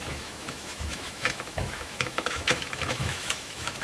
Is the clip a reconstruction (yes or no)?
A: yes